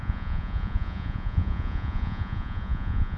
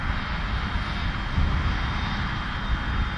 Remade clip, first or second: first